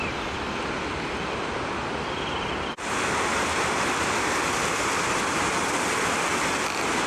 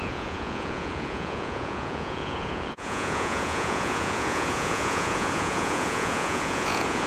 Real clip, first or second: first